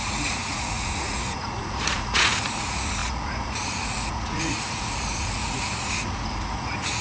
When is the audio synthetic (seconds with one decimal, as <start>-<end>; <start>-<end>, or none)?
0.0-7.0

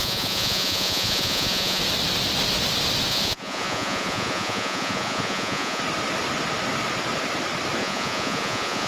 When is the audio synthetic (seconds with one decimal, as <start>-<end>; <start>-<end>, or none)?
0.0-1.8; 3.1-5.8; 7.8-8.9

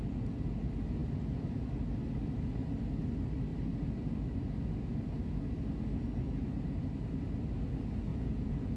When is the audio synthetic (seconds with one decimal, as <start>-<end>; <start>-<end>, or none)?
8.1-8.8

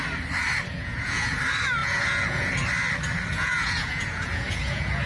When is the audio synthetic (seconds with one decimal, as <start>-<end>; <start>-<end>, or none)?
0.7-1.4; 1.8-2.5; 3.3-5.1

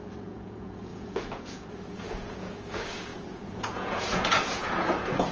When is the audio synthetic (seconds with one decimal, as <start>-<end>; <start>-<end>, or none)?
0.0-5.3

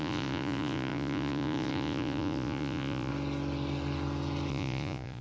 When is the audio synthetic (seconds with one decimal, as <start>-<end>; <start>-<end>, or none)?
0.0-3.1; 4.5-5.2

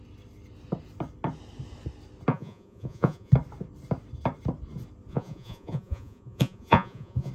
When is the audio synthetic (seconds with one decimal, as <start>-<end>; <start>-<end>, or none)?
2.3-3.3; 5.1-7.3

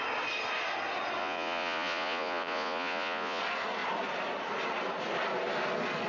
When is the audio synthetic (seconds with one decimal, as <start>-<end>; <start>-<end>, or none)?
1.2-3.4